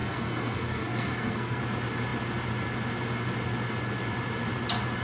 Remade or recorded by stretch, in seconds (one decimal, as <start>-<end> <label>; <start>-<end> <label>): 0.0-1.6 remade; 1.6-5.0 recorded